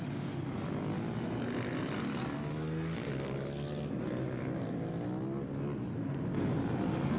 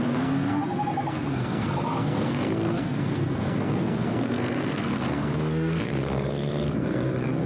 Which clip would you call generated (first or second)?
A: second